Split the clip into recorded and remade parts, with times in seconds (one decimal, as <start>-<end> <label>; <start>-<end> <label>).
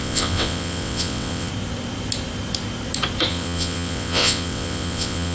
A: 0.0-1.5 remade; 1.5-3.3 recorded; 3.3-5.3 remade